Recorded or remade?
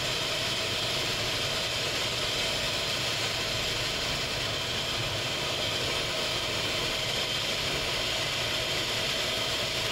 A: recorded